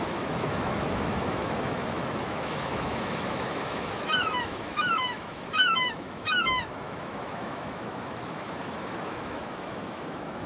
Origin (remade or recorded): remade